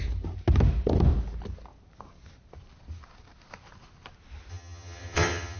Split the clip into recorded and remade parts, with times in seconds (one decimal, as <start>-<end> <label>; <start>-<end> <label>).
0.0-4.5 recorded; 4.5-5.6 remade